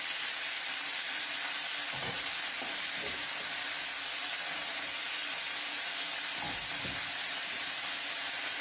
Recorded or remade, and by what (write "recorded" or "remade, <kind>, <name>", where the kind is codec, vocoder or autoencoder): remade, vocoder, BigVGAN v2